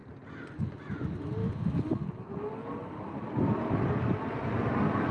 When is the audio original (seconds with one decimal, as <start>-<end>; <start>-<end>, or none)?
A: 0.0-2.8